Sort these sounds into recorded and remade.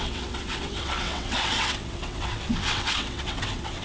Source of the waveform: remade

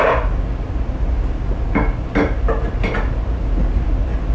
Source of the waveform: recorded